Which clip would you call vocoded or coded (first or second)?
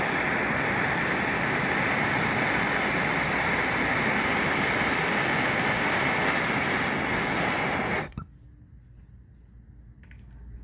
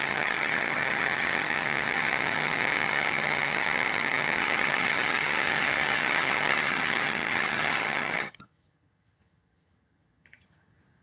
second